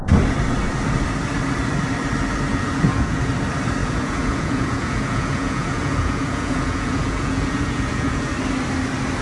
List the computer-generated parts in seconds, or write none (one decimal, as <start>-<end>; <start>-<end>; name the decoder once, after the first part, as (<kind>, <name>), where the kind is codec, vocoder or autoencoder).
2.5-3.3 (vocoder, Vocos); 3.8-8.3